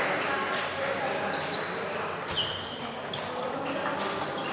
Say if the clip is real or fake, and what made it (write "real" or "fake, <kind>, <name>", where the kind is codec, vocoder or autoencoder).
real